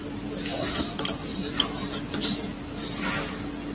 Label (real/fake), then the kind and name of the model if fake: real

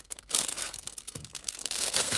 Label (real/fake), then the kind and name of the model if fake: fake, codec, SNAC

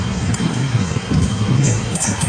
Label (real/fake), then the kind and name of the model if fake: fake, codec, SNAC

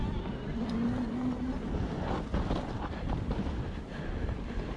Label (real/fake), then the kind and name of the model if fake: real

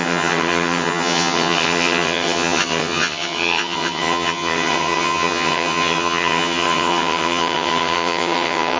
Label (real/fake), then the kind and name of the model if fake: fake, vocoder, HiFi-GAN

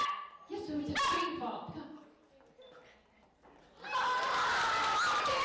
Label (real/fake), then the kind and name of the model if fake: real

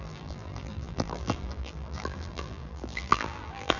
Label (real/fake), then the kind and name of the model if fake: fake, vocoder, BigVGAN v2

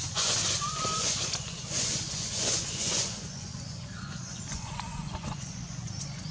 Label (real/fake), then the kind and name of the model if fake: fake, vocoder, Vocos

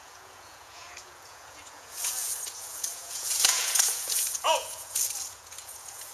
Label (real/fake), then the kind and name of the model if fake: fake, vocoder, Vocos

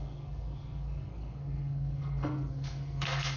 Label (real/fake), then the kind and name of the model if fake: fake, codec, SNAC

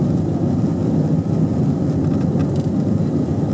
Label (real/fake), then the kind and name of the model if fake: real